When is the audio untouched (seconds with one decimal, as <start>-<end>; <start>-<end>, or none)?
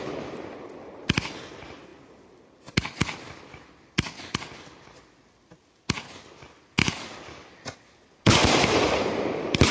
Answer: 0.0-8.4; 9.1-9.7